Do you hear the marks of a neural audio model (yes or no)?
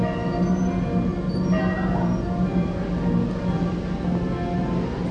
no